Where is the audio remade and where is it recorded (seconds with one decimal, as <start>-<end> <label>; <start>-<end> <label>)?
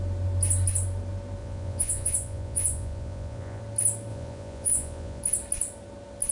0.0-1.4 recorded; 1.4-3.6 remade; 3.6-4.1 recorded; 4.1-5.2 remade; 5.2-6.3 recorded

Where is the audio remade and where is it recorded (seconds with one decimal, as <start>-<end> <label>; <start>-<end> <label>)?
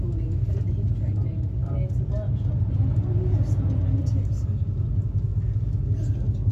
0.0-6.5 recorded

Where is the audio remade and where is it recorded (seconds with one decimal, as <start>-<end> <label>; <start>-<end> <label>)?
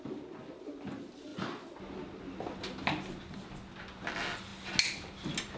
0.0-5.6 recorded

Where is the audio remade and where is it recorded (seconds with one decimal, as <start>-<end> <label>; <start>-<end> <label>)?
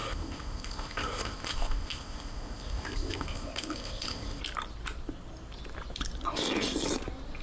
0.0-4.4 remade; 4.4-7.4 recorded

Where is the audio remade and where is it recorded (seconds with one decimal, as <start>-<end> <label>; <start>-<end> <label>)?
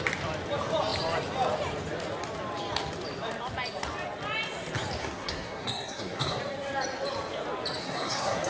0.0-5.0 recorded; 5.0-6.4 remade; 6.4-7.8 recorded; 7.8-8.5 remade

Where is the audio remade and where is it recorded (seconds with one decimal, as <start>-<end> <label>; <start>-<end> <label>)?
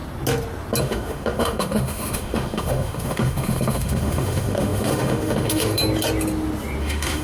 0.0-0.8 recorded; 0.8-5.8 remade; 5.8-6.8 recorded; 6.8-7.2 remade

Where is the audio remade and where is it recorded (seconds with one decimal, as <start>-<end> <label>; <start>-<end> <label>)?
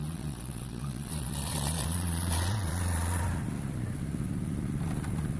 0.0-3.2 remade; 3.2-5.4 recorded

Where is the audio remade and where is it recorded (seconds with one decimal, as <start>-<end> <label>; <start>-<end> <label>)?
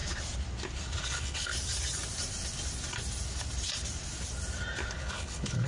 0.0-1.0 recorded; 1.0-1.5 remade; 1.5-4.9 recorded; 4.9-5.7 remade